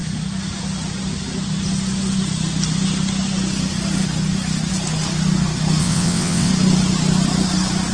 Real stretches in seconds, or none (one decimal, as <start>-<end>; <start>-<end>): 0.0-5.8; 6.5-7.9